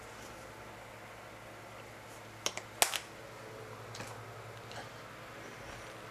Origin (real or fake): real